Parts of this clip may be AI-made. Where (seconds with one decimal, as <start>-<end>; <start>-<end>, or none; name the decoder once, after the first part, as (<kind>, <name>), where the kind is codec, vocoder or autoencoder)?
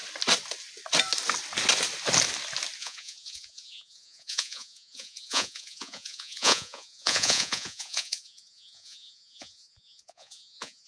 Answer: 2.8-10.9 (vocoder, Vocos)